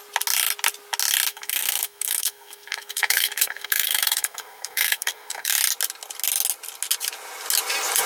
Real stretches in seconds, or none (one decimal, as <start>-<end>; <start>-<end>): 0.0-1.3; 5.5-8.1

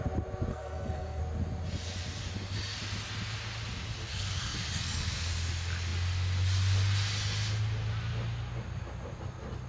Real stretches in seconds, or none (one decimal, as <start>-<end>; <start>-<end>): 0.0-0.5; 1.2-4.1; 5.3-9.7

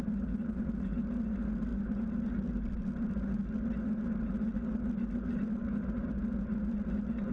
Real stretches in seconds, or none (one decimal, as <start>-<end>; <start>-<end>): 0.0-7.3

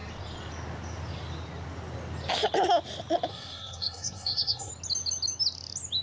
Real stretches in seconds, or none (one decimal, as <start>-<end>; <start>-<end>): 0.0-3.3; 4.7-6.0